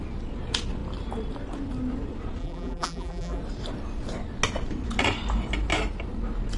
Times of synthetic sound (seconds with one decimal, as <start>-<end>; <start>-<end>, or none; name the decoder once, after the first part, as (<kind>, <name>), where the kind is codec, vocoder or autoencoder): 2.4-3.4 (vocoder, BigVGAN v2)